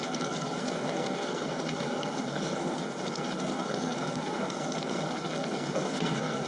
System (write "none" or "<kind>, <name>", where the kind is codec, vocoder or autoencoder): codec, SNAC